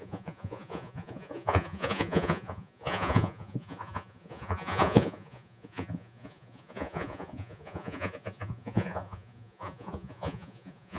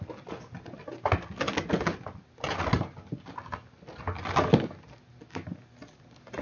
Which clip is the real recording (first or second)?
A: second